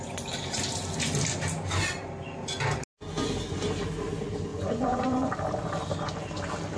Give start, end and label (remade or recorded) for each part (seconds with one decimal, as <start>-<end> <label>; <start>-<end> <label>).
0.0-4.5 recorded; 4.5-5.3 remade; 5.3-6.8 recorded